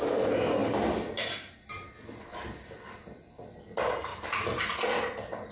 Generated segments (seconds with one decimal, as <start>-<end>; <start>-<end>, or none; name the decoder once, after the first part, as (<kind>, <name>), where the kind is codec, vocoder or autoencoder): 4.1-4.6 (vocoder, BigVGAN v2)